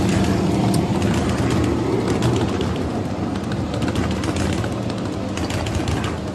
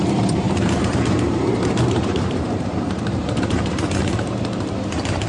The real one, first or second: first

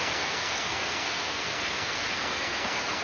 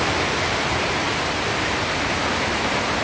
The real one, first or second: second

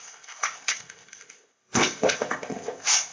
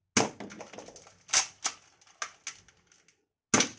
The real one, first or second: second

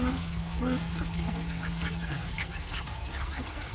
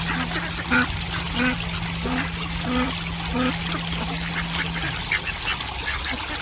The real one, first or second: second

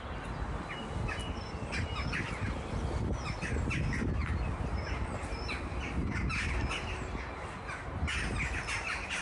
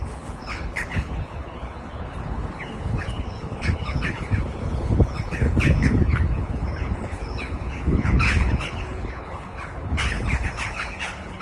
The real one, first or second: first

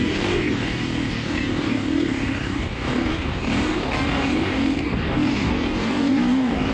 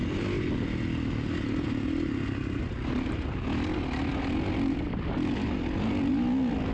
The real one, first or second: second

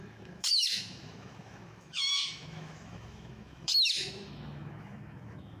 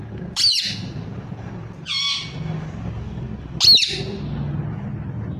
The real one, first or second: second